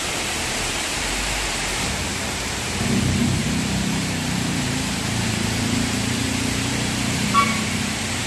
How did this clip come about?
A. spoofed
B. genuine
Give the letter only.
A